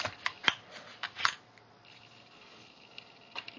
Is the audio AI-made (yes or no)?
no